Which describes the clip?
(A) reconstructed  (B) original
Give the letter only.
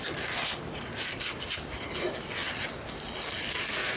B